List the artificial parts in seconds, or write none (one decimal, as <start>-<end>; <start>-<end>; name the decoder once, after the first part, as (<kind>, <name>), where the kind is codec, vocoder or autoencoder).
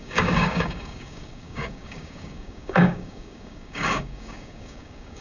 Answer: 0.0-5.2 (codec, DAC)